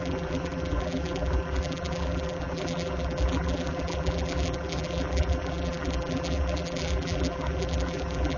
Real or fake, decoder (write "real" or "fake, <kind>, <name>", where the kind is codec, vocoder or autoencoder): fake, vocoder, BigVGAN v2